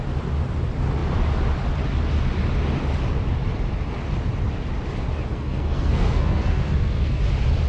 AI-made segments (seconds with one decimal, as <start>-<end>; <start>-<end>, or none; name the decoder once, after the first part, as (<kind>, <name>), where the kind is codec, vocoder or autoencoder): 5.3-7.2 (codec, SNAC)